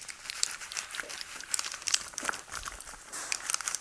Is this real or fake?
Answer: fake